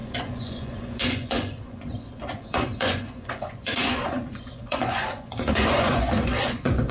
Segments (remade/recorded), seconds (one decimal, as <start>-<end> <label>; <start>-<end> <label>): 0.0-6.9 remade